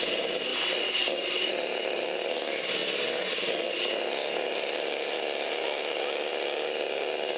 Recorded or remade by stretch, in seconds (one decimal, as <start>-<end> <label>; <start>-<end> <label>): 0.0-7.4 recorded